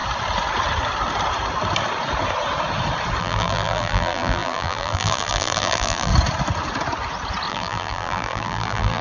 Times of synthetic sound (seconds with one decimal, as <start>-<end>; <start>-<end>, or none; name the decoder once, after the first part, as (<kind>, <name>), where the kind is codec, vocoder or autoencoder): 3.2-6.1 (vocoder, BigVGAN v2); 7.5-9.0